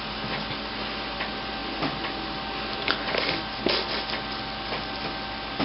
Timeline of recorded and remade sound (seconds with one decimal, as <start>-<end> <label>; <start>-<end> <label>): 0.0-5.6 recorded